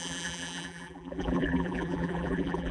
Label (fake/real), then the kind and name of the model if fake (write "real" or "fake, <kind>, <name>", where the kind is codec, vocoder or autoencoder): fake, vocoder, BigVGAN v2